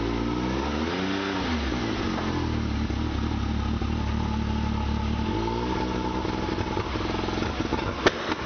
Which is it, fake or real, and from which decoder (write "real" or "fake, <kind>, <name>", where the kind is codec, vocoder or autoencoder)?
real